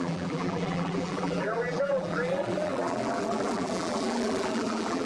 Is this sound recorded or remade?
remade